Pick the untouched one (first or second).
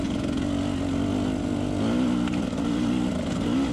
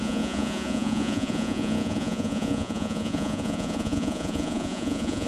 first